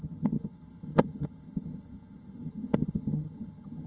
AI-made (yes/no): yes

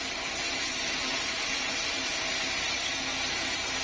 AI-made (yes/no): no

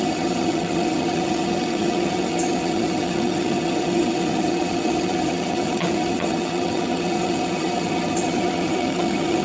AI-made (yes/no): yes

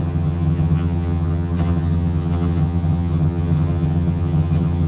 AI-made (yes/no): yes